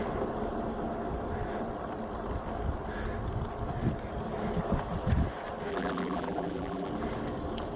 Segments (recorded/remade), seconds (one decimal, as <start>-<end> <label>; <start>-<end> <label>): 0.0-5.7 recorded; 5.7-6.9 remade; 6.9-7.8 recorded